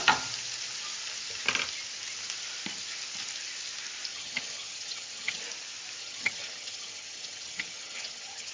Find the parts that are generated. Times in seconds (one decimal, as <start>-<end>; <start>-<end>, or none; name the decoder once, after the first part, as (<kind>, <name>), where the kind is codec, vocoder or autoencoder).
4.1-5.4 (vocoder, HiFi-GAN); 6.0-8.5